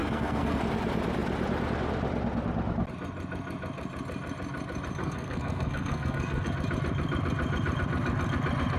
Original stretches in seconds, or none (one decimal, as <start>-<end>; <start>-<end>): 0.6-5.0; 6.5-8.8